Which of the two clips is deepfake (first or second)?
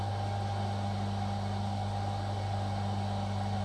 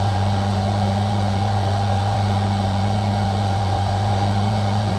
second